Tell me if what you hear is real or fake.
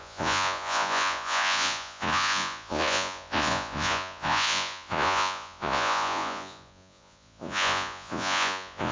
fake